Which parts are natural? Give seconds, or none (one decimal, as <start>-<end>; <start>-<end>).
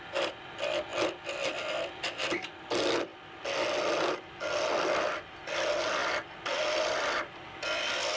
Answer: 0.0-8.2